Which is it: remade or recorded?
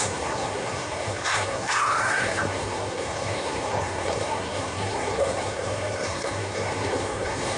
remade